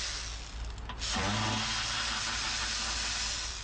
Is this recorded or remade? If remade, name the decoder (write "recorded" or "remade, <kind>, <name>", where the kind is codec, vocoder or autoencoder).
recorded